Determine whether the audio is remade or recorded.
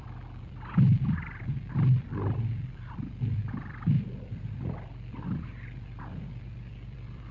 remade